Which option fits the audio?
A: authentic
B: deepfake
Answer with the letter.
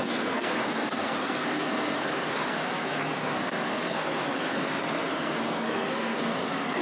B